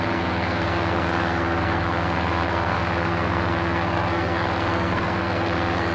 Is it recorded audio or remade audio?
remade